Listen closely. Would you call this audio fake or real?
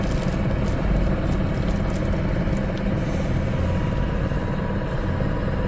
real